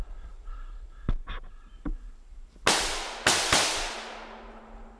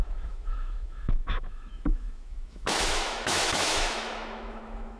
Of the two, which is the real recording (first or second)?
first